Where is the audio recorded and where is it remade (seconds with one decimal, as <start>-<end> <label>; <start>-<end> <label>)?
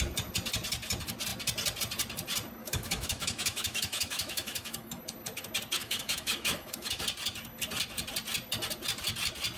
0.0-2.6 recorded; 2.6-5.0 remade; 5.0-5.8 recorded; 5.8-7.0 remade; 7.0-9.6 recorded